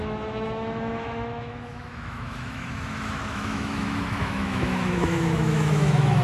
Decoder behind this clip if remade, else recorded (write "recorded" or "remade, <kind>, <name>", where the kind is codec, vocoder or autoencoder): remade, autoencoder, DAC-VAE